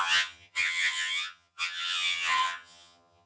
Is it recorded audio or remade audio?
remade